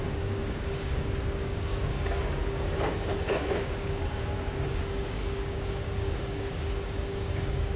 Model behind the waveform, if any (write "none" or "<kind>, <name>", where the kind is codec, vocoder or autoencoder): codec, DAC